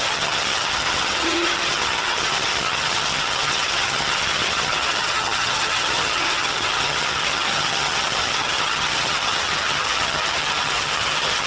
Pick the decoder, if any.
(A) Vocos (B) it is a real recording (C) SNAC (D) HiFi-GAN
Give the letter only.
D